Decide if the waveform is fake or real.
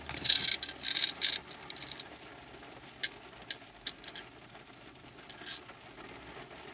real